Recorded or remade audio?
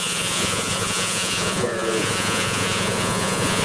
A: remade